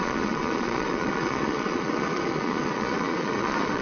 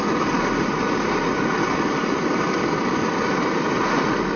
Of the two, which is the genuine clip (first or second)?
second